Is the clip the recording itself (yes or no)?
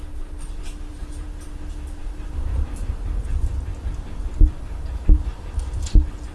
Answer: yes